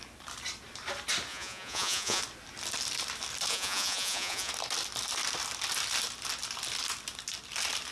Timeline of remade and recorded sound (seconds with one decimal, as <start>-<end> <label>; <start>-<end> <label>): 0.0-1.3 recorded; 1.3-2.2 remade; 2.2-3.5 recorded; 3.5-4.5 remade; 4.5-7.9 recorded